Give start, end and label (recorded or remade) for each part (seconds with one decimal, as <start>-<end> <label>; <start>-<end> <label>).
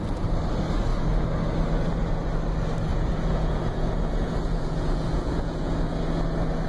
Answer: 0.0-2.9 recorded; 2.9-5.8 remade; 5.8-6.7 recorded